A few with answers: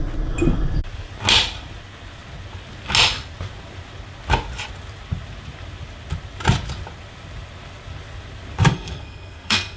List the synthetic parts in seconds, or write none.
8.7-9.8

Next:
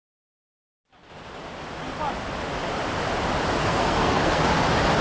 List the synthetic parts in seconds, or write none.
3.6-4.4

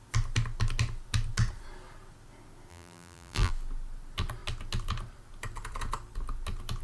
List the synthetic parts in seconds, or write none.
2.7-3.5

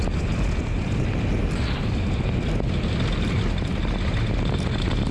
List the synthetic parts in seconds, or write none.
0.0-1.4; 4.5-5.1

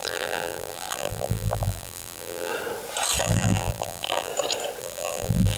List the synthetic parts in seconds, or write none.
0.0-2.5; 3.2-4.3; 4.8-5.6

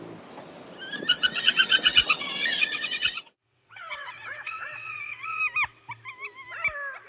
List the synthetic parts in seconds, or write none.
1.1-5.4

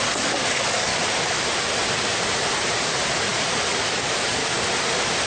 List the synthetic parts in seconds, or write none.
0.0-0.9; 3.6-4.4